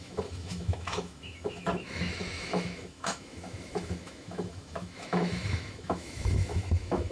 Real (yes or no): no